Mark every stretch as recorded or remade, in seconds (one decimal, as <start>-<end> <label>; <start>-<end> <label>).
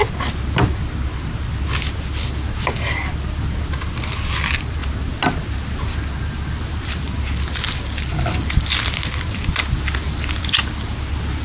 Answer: 0.0-11.4 recorded